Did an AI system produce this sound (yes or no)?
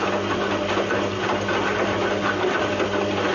no